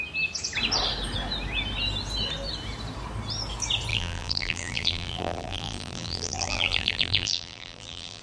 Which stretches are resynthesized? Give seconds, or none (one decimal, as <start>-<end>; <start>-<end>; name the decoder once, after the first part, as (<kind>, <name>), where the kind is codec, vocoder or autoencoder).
3.9-8.2 (vocoder, BigVGAN v2)